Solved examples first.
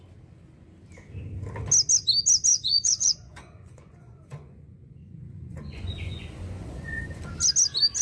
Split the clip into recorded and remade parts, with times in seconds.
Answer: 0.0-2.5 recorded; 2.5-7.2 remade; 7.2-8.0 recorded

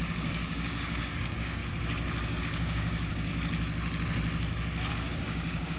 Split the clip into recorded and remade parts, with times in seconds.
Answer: 0.0-1.6 remade; 1.6-2.4 recorded; 2.4-3.3 remade; 3.3-4.9 recorded; 4.9-5.8 remade

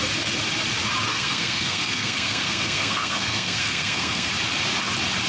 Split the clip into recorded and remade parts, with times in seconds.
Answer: 0.0-1.1 recorded; 1.1-4.3 remade; 4.3-5.3 recorded

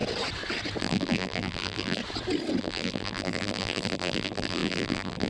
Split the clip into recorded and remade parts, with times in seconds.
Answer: 0.0-0.8 recorded; 0.8-2.0 remade; 2.0-2.6 recorded; 2.6-5.3 remade

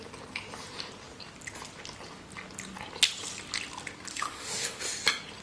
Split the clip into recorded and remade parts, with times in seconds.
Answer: 0.0-4.1 recorded; 4.1-4.8 remade; 4.8-5.4 recorded

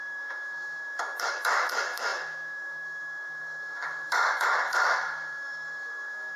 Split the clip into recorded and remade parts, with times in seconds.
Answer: 0.0-6.4 remade